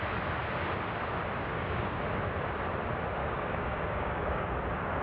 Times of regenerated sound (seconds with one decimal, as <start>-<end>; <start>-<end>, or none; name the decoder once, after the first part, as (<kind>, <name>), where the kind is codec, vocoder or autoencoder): 1.4-2.0 (codec, DAC); 3.2-4.5